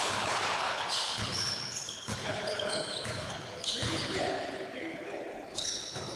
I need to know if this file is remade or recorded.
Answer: remade